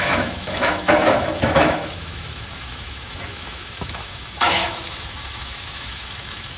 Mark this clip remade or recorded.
remade